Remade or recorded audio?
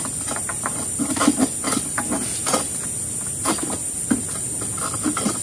recorded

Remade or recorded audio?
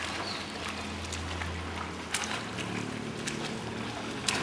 recorded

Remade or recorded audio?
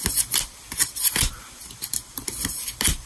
recorded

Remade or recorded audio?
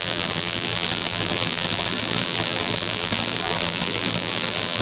remade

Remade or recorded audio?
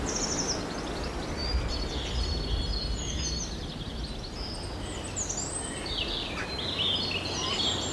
recorded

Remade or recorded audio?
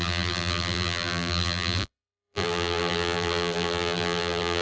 remade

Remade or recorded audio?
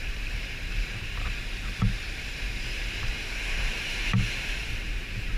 remade